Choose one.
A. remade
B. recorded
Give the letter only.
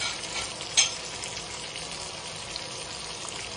B